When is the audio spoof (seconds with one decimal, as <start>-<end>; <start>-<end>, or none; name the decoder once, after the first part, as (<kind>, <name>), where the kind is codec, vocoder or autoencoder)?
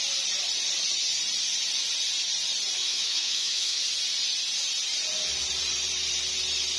2.8-3.8 (autoencoder, DAC-VAE)